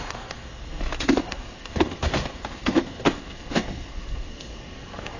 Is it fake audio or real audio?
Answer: fake